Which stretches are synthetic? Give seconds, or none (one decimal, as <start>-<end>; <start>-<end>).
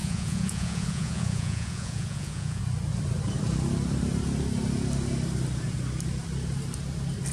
0.0-2.6